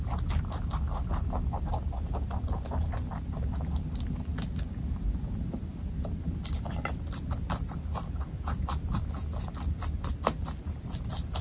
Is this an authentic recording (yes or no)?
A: yes